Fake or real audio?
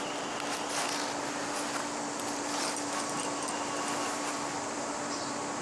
real